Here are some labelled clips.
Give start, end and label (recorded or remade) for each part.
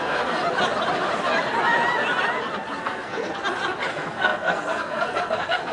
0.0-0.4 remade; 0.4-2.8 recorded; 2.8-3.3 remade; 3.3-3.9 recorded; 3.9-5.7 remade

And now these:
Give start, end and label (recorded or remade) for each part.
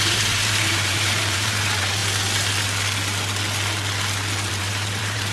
0.0-2.0 remade; 2.0-4.5 recorded; 4.5-5.3 remade